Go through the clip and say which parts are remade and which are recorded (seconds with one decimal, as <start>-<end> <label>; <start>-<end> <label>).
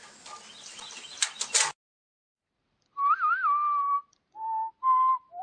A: 0.0-2.1 recorded; 2.1-5.4 remade